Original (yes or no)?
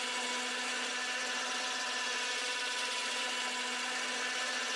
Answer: yes